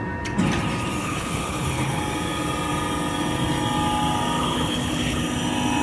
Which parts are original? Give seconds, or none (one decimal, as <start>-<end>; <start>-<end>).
0.0-1.0; 2.0-4.4; 5.2-5.8